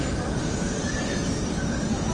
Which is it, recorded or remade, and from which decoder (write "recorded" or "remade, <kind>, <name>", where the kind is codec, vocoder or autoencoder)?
recorded